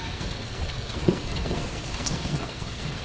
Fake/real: fake